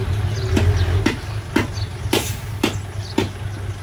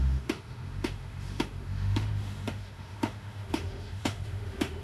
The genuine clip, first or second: first